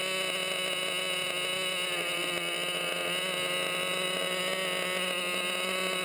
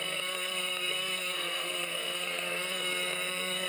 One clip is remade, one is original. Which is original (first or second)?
first